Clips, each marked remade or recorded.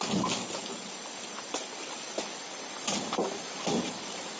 recorded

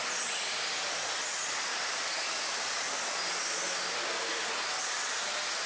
recorded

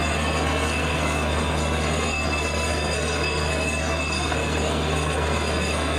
remade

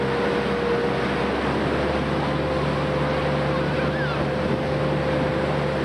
recorded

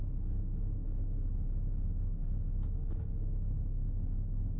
recorded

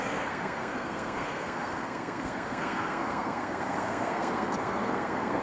remade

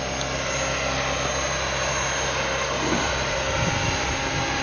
recorded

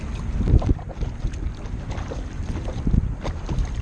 recorded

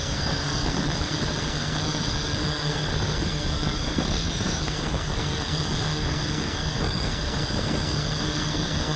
remade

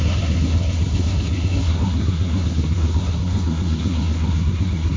remade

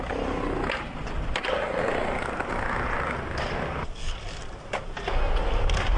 recorded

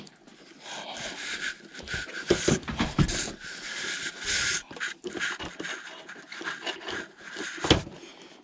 recorded